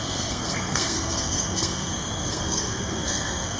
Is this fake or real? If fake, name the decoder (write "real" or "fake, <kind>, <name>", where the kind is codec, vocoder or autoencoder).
fake, codec, SNAC